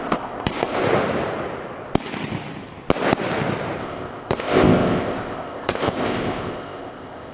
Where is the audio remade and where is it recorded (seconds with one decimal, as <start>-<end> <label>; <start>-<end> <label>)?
0.0-0.8 remade; 0.8-3.8 recorded; 3.8-7.3 remade